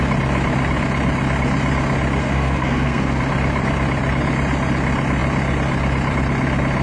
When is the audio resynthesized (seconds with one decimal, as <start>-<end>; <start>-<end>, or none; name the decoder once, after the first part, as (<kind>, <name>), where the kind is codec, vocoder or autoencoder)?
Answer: 2.2-3.2 (codec, SNAC)